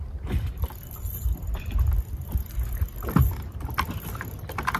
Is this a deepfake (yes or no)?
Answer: yes